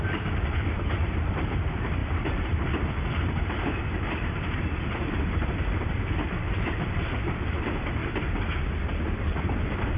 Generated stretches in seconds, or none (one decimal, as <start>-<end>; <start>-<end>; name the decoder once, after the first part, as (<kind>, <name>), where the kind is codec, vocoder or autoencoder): 0.0-8.0 (vocoder, BigVGAN v2); 9.4-10.0